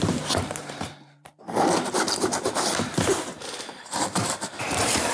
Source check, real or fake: fake